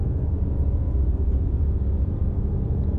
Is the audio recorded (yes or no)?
no